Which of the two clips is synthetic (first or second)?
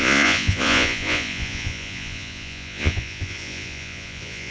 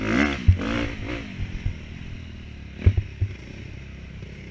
first